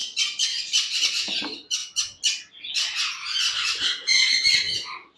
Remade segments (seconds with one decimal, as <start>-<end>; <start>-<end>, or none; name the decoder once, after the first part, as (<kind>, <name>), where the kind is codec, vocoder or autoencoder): none